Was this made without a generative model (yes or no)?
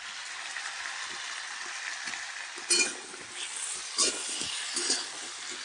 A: yes